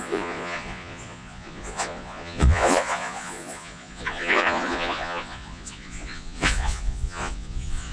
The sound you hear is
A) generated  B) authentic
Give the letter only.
A